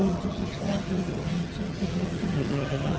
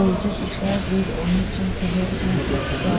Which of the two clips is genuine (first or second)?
second